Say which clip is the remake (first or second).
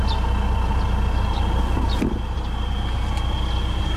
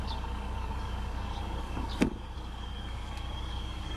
second